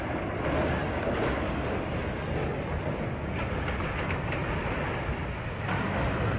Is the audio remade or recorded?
recorded